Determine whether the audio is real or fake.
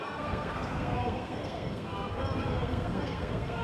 fake